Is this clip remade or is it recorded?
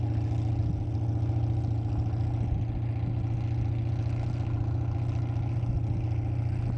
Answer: recorded